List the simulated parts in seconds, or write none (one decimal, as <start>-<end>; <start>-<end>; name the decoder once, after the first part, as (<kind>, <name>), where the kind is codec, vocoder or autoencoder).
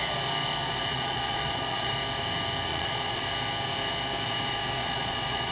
0.9-1.9 (vocoder, Vocos); 2.7-3.2; 4.8-5.5